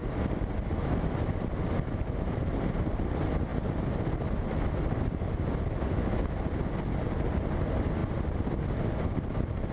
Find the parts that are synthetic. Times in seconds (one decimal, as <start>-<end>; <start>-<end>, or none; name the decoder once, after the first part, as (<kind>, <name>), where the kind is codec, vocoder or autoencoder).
0.0-3.5 (vocoder, BigVGAN v2); 4.3-9.7